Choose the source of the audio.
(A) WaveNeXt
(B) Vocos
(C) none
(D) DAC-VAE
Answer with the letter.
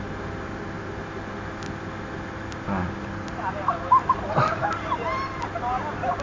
C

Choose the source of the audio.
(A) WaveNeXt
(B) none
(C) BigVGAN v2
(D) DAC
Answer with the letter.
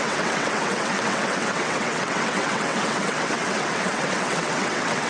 A